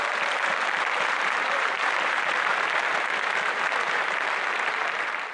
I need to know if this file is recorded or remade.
remade